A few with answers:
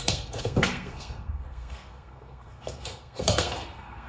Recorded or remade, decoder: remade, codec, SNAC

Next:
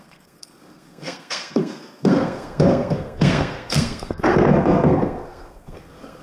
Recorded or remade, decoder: remade, codec, SNAC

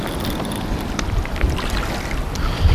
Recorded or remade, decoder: recorded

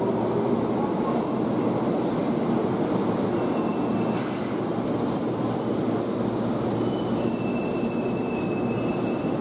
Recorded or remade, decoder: recorded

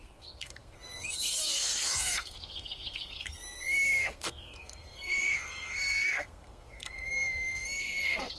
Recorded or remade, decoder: remade, codec, SNAC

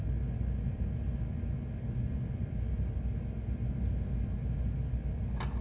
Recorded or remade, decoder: recorded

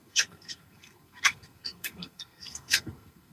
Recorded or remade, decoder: remade, codec, SNAC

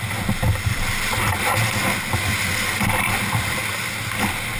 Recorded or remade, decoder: recorded